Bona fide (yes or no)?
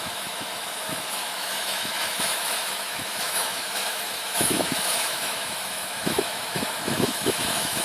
no